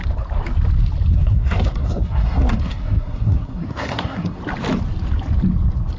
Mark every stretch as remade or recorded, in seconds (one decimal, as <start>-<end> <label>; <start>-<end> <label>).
0.0-1.1 recorded; 1.1-4.4 remade; 4.4-6.0 recorded